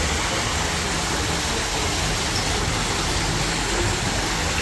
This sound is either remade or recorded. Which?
recorded